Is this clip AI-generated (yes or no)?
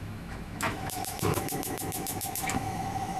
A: yes